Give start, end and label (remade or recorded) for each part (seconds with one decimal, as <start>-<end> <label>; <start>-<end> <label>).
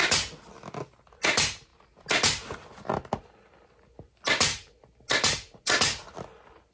0.0-6.7 recorded